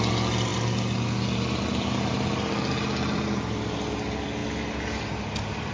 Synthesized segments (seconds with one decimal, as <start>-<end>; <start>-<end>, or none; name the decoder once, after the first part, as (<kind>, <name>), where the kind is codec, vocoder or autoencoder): none